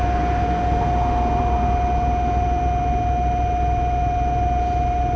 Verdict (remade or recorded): recorded